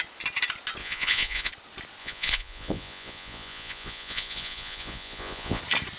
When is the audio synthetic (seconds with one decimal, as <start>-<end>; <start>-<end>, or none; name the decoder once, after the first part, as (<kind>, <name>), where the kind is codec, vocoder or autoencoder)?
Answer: 0.8-1.5 (vocoder, Vocos); 2.0-5.6